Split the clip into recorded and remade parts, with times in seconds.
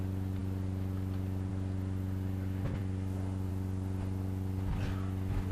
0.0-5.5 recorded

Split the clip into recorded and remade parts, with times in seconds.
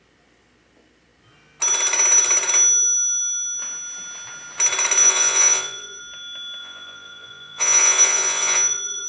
0.0-5.0 recorded; 5.0-6.0 remade; 6.0-6.6 recorded; 6.6-9.1 remade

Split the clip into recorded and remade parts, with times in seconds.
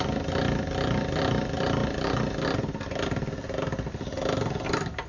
0.0-5.1 recorded